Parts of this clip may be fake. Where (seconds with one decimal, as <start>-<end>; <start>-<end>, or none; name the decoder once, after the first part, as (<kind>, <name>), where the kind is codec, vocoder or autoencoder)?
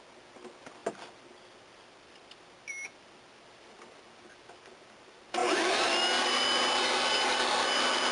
5.4-8.1 (vocoder, BigVGAN v2)